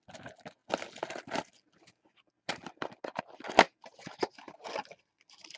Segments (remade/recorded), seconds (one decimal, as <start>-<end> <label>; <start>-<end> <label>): 0.0-4.6 recorded; 4.6-5.6 remade